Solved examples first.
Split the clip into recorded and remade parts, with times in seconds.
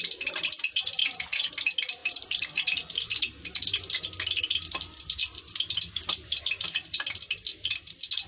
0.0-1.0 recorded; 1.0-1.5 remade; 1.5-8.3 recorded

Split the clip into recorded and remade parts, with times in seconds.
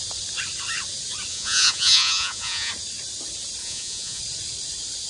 0.0-1.3 recorded; 1.3-2.7 remade; 2.7-3.6 recorded; 3.6-4.2 remade; 4.2-5.1 recorded